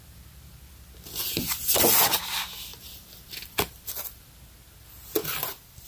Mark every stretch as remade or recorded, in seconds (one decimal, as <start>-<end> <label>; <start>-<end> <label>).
0.0-1.6 recorded; 1.6-2.2 remade; 2.2-2.7 recorded; 2.7-4.2 remade; 4.2-5.2 recorded; 5.2-5.9 remade